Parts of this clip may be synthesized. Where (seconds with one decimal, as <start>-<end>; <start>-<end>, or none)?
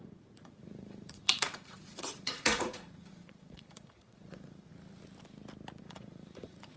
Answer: 0.0-4.7; 5.8-6.8